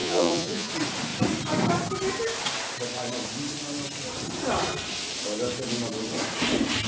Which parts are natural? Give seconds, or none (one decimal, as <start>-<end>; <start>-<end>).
0.7-6.9